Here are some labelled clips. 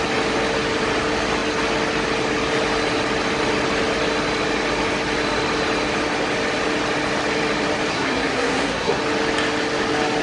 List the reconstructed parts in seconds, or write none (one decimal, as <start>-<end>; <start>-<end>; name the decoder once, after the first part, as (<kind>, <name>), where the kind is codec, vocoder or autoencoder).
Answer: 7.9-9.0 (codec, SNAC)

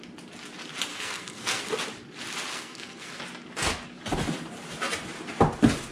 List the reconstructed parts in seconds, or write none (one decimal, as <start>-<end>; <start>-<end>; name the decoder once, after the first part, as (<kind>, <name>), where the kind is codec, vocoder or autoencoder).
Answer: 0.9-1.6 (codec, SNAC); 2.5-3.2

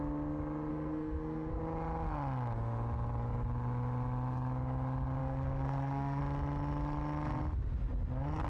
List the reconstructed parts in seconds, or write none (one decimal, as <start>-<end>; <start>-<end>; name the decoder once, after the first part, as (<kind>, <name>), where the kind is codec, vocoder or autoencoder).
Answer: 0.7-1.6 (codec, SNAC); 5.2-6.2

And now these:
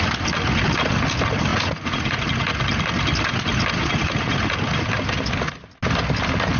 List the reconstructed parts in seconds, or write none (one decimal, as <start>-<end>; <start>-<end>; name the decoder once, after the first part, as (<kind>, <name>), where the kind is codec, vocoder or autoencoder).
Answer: 1.5-2.2 (vocoder, Vocos); 3.8-4.4

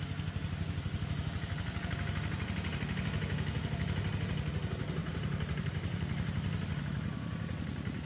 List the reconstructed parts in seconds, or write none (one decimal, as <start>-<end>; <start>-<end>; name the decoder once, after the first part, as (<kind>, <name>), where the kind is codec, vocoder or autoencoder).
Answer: 5.0-6.8 (vocoder, BigVGAN v2)

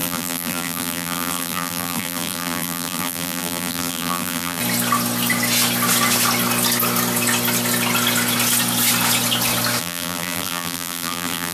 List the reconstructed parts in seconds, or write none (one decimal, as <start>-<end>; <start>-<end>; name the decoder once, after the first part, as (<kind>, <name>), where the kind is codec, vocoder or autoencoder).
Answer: 0.0-4.6 (vocoder, BigVGAN v2); 9.8-11.5